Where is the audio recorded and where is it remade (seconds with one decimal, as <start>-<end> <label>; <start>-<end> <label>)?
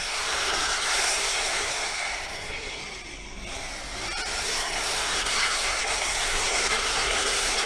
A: 0.0-2.8 remade; 2.8-4.4 recorded; 4.4-7.7 remade